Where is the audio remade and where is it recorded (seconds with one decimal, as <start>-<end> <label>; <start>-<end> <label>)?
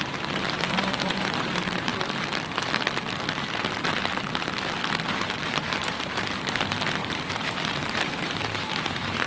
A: 0.0-1.9 remade; 1.9-5.1 recorded; 5.1-9.3 remade